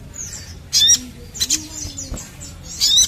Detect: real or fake real